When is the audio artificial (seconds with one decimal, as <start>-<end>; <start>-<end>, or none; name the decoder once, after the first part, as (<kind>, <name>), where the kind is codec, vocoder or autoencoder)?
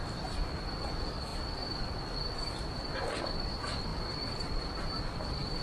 3.9-4.6 (vocoder, BigVGAN v2)